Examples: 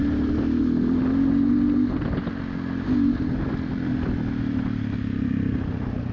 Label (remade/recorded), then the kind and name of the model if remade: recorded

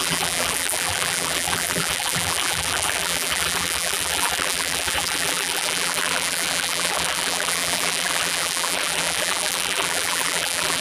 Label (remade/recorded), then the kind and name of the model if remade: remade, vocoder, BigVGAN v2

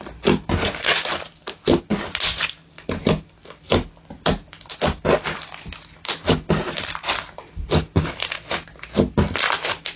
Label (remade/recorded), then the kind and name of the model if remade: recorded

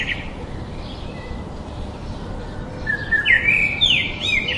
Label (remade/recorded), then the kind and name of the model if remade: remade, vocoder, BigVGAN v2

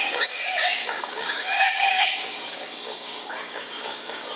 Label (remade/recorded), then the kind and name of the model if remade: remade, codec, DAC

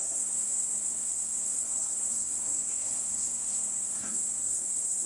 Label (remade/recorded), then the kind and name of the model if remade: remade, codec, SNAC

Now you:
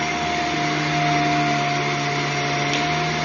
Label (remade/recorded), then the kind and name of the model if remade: recorded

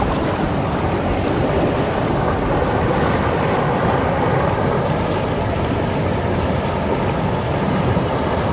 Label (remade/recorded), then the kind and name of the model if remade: recorded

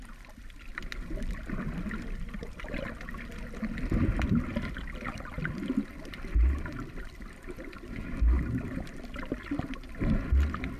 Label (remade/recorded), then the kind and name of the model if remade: recorded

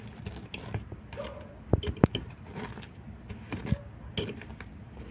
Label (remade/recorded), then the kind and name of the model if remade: recorded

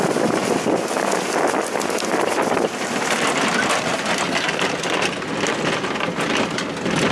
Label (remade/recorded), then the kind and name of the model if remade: recorded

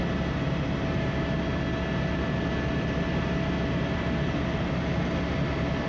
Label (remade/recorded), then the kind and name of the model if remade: recorded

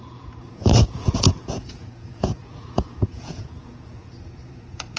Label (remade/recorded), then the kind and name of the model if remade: remade, vocoder, Vocos